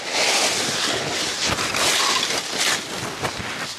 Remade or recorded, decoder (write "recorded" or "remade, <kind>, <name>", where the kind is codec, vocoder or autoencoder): recorded